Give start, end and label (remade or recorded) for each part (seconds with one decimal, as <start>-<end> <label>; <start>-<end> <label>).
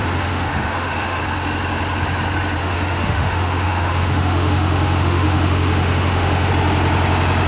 0.0-1.2 remade; 1.2-2.6 recorded; 2.6-6.5 remade; 6.5-7.5 recorded